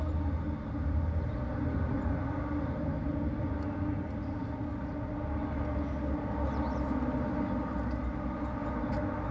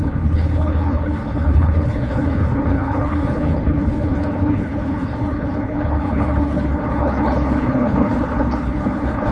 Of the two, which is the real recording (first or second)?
first